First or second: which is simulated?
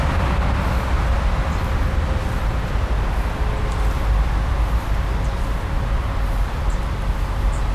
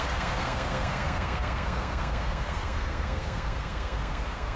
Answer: second